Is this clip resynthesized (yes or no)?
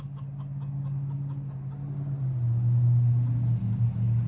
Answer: no